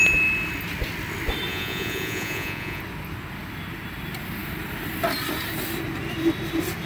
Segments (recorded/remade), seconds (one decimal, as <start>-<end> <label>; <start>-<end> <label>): 0.0-1.5 recorded; 1.5-2.8 remade; 2.8-6.9 recorded